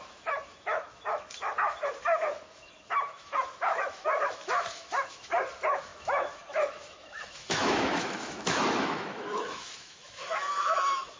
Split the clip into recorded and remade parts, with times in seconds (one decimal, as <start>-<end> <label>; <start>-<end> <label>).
0.0-11.2 remade

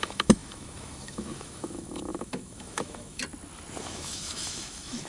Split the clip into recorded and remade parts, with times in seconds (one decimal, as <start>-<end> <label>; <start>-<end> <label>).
0.0-3.2 remade; 3.2-3.8 recorded; 3.8-5.1 remade

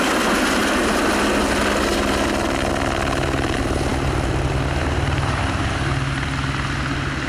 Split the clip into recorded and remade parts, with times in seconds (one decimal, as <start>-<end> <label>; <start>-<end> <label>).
0.0-7.3 recorded

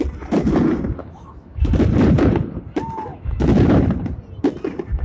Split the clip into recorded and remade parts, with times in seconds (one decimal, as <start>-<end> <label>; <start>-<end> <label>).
0.0-1.0 recorded; 1.0-1.7 remade; 1.7-3.1 recorded; 3.1-3.8 remade; 3.8-5.0 recorded

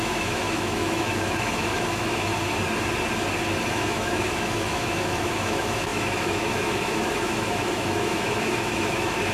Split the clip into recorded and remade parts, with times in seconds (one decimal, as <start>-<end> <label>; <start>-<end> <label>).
0.0-2.3 remade; 2.3-3.7 recorded; 3.7-9.3 remade

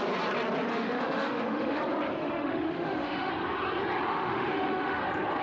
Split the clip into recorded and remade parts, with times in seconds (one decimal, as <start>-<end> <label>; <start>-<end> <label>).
0.0-0.7 recorded; 0.7-1.8 remade; 1.8-2.2 recorded; 2.2-3.3 remade; 3.3-4.1 recorded; 4.1-5.0 remade; 5.0-5.4 recorded

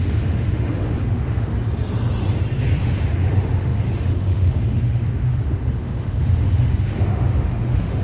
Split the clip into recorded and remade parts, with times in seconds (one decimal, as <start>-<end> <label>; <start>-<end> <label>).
0.0-1.5 remade; 1.5-2.8 recorded; 2.8-8.0 remade

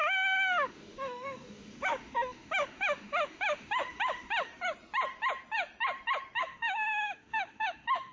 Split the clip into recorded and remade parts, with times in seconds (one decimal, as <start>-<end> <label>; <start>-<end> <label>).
0.0-4.5 remade; 4.5-6.4 recorded; 6.4-8.1 remade